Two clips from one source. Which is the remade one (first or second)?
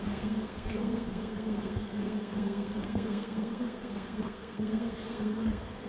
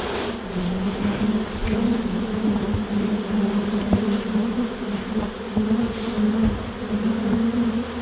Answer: first